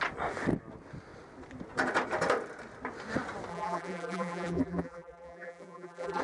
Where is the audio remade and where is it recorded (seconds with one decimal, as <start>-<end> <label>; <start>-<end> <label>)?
0.0-3.5 recorded; 3.5-6.2 remade